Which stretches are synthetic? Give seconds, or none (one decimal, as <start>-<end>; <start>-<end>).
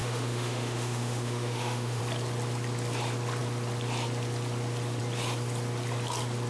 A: 0.0-2.0